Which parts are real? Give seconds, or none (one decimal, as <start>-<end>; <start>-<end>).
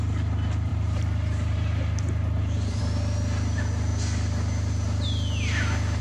0.0-0.7; 2.8-6.0